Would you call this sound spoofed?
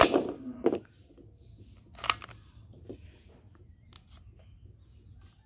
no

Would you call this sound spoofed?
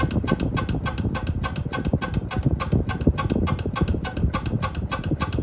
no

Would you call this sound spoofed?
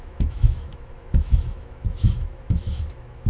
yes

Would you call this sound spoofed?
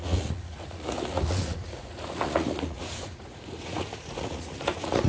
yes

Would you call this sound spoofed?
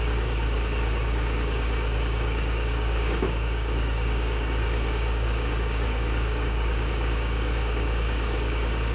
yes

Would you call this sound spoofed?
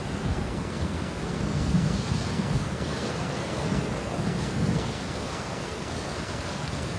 yes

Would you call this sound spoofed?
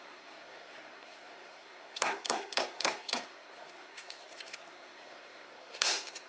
yes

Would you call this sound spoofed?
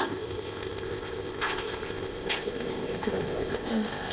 yes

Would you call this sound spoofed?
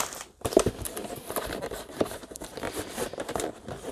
yes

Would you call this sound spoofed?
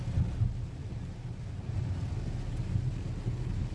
no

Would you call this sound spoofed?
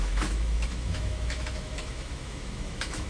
yes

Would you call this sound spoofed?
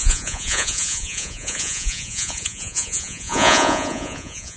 yes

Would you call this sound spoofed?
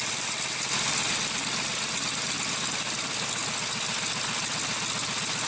no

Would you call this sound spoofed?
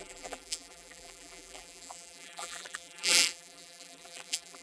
yes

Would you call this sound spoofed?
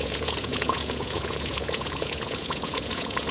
yes